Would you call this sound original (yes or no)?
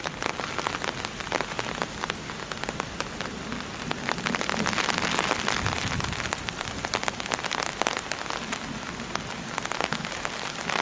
yes